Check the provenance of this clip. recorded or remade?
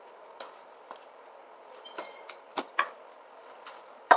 remade